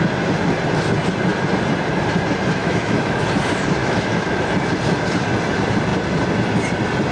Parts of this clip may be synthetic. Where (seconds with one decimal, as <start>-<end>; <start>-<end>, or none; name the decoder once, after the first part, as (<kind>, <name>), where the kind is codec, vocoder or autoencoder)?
2.6-3.2 (autoencoder, DAC-VAE); 3.8-4.4